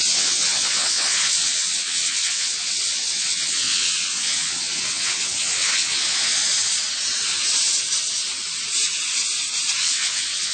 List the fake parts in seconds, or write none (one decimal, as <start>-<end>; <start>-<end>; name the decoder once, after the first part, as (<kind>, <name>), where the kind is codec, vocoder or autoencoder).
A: 0.0-6.4 (vocoder, WaveNeXt); 9.8-10.5